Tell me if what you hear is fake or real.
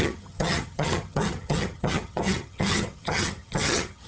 fake